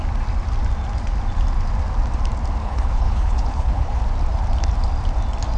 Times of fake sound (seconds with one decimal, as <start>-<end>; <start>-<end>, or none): 2.6-4.0